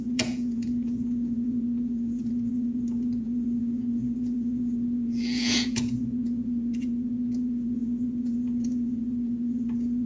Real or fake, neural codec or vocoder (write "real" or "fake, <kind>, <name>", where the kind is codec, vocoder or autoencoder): fake, vocoder, Vocos